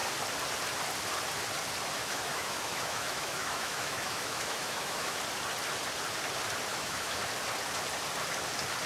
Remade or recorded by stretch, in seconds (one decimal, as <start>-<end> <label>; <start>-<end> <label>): 0.0-2.0 recorded; 2.0-5.2 remade; 5.2-6.7 recorded; 6.7-7.2 remade; 7.2-8.9 recorded